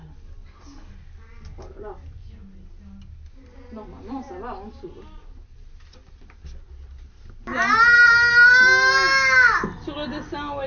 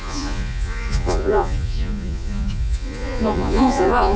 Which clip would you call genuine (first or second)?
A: first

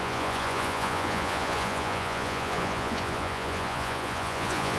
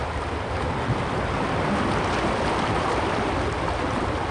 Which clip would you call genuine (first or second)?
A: second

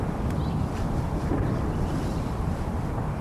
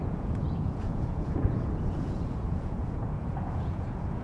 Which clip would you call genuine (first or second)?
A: first